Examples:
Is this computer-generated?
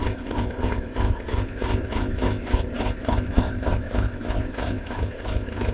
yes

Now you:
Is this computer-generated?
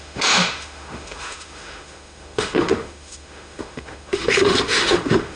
yes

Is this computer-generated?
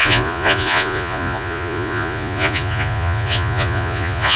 yes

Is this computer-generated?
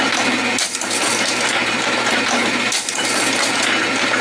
no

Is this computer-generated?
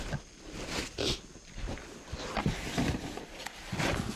yes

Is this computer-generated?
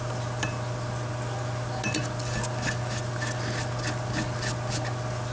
no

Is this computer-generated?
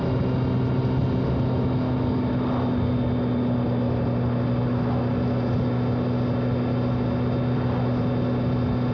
no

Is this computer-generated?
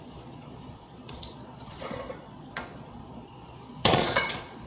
yes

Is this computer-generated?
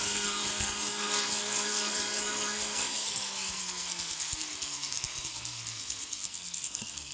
yes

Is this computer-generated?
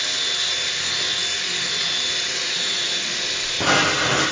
no